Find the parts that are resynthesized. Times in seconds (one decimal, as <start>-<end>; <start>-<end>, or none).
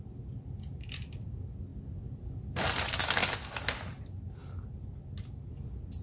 none